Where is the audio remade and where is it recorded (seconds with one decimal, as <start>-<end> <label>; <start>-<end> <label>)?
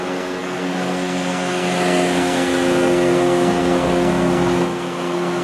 0.0-5.4 remade